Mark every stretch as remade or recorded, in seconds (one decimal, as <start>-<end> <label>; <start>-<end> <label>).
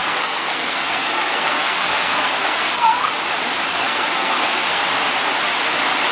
0.0-3.1 remade; 3.1-3.7 recorded; 3.7-4.8 remade; 4.8-6.1 recorded